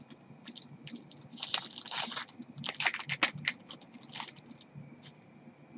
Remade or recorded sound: recorded